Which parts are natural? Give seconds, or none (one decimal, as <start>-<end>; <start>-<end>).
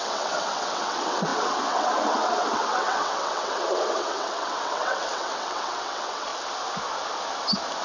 6.3-7.8